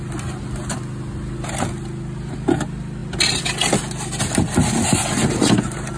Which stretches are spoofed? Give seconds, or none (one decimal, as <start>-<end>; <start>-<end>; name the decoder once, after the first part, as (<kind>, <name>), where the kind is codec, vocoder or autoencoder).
none